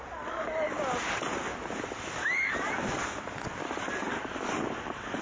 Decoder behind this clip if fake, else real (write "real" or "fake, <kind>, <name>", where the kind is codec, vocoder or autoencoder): real